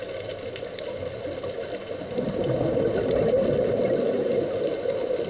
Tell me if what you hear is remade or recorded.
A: recorded